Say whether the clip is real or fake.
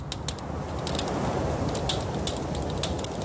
real